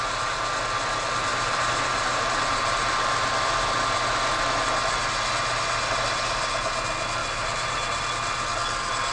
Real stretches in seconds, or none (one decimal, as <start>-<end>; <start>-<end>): 0.0-1.3; 3.3-7.2; 8.0-9.1